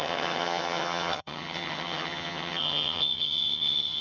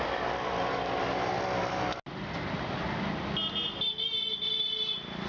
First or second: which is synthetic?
first